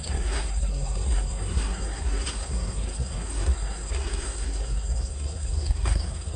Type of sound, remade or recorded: remade